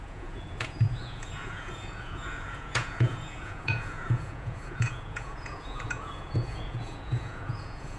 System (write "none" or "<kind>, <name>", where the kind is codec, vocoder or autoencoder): vocoder, Vocos